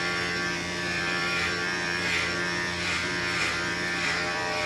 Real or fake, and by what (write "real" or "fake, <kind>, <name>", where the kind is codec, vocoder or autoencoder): fake, vocoder, BigVGAN v2